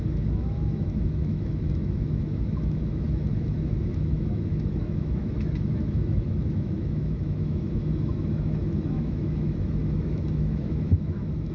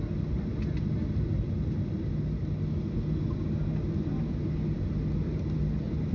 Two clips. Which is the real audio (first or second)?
second